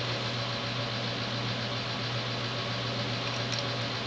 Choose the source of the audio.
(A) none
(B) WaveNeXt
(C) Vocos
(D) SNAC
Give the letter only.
A